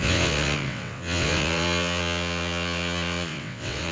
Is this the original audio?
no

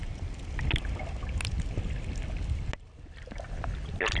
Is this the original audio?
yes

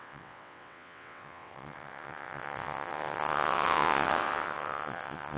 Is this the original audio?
no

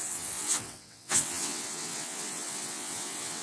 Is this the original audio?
no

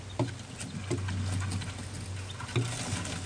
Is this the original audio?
yes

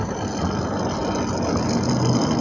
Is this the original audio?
yes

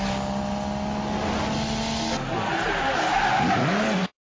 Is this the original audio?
yes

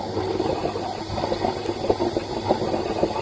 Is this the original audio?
yes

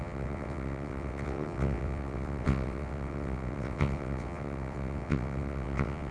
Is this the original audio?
no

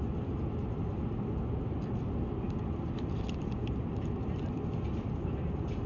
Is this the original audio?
yes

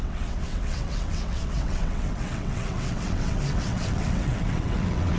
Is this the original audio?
no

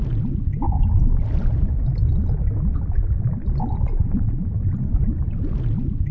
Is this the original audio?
yes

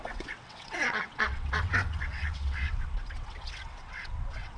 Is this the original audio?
no